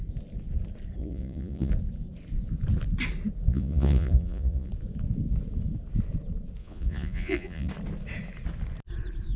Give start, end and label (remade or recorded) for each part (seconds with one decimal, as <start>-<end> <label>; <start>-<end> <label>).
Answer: 0.0-1.0 recorded; 1.0-1.7 remade; 1.7-3.5 recorded; 3.5-4.7 remade; 4.7-6.6 recorded; 6.6-7.7 remade; 7.7-9.4 recorded